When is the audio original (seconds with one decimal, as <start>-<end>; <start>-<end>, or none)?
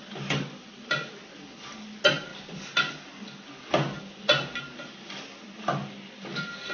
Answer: 0.0-6.7